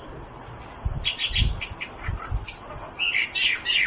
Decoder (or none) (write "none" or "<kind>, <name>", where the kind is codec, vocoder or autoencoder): none